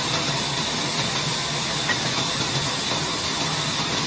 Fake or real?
real